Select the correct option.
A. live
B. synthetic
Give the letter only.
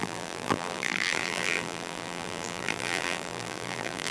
B